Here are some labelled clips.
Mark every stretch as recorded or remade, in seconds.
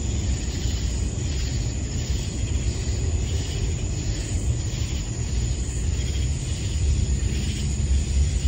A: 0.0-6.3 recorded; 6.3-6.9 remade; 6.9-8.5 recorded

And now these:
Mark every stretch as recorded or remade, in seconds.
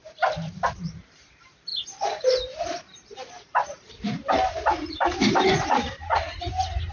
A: 0.0-6.1 remade; 6.1-6.9 recorded